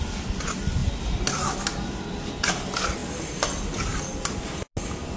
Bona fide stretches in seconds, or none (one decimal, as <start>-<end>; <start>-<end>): 0.0-5.2